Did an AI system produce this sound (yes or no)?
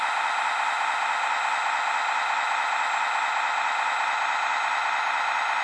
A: no